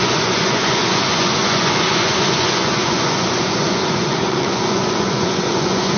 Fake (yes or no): yes